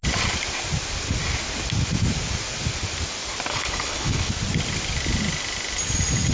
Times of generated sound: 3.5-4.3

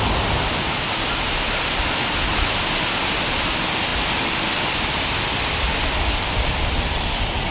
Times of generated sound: none

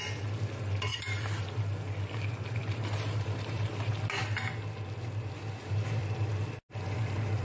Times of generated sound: 0.9-1.4; 2.6-3.9